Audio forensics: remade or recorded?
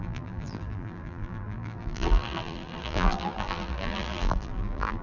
remade